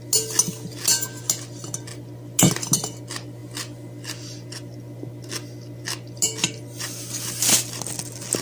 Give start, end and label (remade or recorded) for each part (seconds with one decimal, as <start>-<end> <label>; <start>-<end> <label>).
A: 0.0-8.4 recorded